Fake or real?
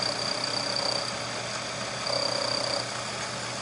real